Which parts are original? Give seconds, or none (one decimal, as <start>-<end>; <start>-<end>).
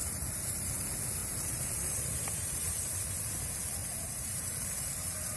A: 0.7-1.2; 3.3-3.8